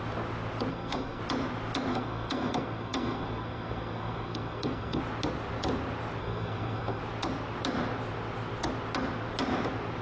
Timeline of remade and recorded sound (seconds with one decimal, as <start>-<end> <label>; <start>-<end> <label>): 0.0-0.7 recorded; 0.7-1.2 remade; 1.2-1.9 recorded; 1.9-5.0 remade; 5.0-6.2 recorded; 6.2-7.0 remade; 7.0-10.0 recorded